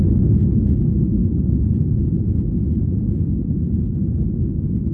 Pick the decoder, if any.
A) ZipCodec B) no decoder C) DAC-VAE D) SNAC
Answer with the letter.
B